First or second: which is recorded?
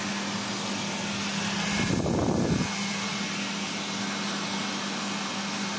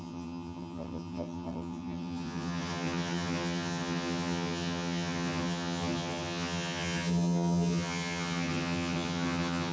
first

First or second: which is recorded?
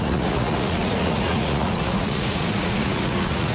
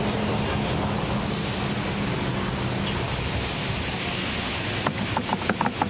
second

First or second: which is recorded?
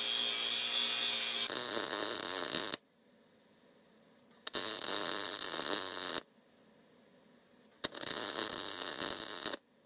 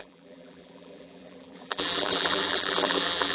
first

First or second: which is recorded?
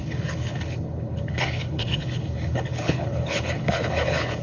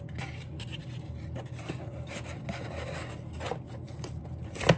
second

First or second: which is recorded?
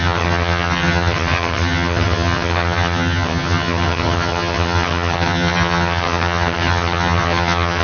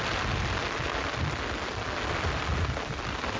second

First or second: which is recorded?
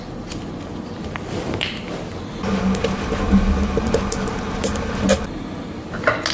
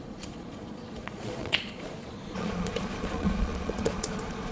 first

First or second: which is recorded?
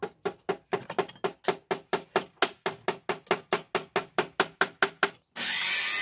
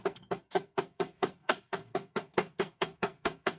first